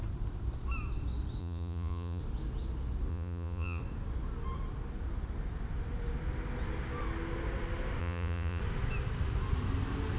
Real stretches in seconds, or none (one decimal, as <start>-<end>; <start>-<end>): 0.0-1.4; 2.2-3.1; 3.8-8.0; 8.6-10.2

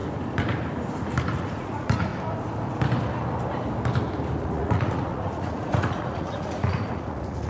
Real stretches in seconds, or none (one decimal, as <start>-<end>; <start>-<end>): 0.0-1.4; 2.1-4.4